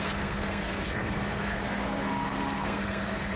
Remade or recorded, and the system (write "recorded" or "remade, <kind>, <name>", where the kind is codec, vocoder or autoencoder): remade, codec, SNAC